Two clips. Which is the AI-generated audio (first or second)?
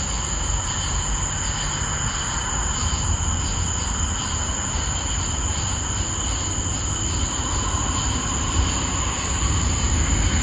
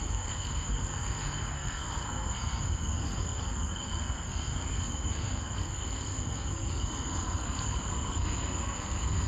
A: second